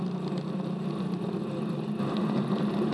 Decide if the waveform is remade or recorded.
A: recorded